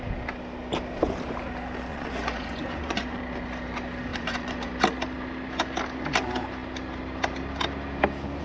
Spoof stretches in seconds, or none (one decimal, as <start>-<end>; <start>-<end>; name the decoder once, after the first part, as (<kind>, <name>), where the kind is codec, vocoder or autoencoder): 1.9-3.2 (vocoder, Vocos); 4.1-4.7

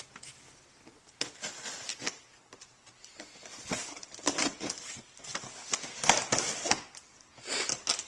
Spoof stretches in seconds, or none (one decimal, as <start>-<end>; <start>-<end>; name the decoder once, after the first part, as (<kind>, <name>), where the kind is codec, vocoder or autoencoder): none

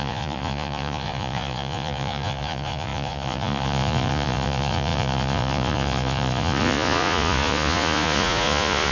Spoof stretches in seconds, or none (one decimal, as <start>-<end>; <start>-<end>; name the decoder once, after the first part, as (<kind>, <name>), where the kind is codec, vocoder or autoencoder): 0.0-8.9 (vocoder, Vocos)

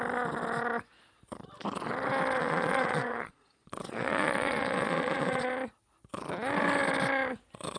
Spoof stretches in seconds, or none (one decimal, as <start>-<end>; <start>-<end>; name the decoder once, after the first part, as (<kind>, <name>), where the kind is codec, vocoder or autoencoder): 2.4-5.5 (vocoder, Vocos)

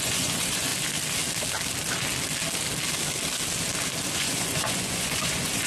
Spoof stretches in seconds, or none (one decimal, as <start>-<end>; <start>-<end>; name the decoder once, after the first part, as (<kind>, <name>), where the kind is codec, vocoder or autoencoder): 0.0-0.7 (vocoder, Vocos); 4.1-5.7